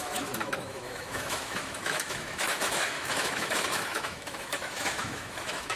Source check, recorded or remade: remade